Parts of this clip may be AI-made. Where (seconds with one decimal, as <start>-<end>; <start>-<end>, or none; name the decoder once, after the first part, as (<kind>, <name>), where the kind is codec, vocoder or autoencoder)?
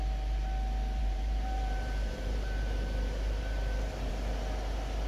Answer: 1.0-4.1 (vocoder, BigVGAN v2)